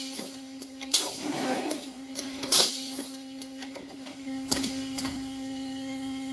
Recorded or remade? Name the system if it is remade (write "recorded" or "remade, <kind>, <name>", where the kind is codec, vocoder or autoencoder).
remade, codec, SNAC